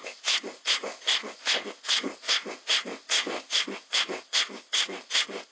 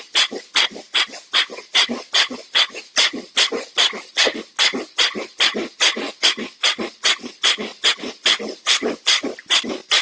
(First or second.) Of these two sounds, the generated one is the first